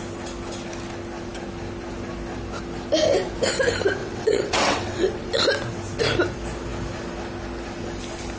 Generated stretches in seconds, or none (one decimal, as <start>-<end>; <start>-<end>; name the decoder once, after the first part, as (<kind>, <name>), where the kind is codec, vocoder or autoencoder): 4.0-5.4 (vocoder, WaveNeXt)

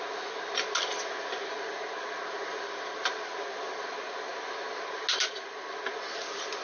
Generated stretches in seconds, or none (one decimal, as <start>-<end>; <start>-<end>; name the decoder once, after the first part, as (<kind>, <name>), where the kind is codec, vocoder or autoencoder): none

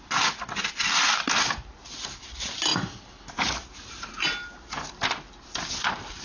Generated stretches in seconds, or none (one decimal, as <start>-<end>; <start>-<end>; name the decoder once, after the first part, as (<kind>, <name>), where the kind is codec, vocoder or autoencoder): none

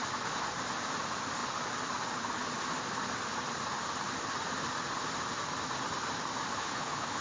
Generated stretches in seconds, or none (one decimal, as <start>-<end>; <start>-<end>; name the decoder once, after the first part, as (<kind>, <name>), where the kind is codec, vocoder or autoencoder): 6.6-7.2 (codec, HILCodec)

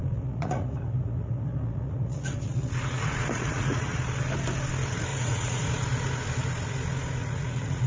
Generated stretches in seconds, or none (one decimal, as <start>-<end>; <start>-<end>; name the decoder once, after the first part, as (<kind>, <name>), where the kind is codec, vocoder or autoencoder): 0.0-4.0 (vocoder, Vocos); 5.1-5.6; 7.2-7.9

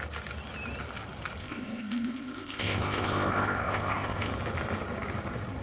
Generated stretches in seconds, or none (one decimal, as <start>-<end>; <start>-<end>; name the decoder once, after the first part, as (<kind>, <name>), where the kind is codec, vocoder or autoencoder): 1.4-4.3 (codec, ZipCodec)

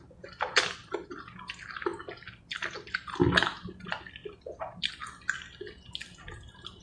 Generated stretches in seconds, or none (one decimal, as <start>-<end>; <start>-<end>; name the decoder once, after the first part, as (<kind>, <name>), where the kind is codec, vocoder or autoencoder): none

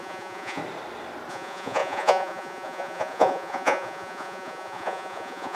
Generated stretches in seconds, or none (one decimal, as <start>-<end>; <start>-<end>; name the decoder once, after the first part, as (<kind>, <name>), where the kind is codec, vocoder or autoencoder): 0.0-0.6 (vocoder, Vocos); 1.3-5.6